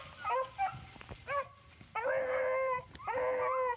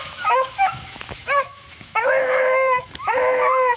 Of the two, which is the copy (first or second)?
second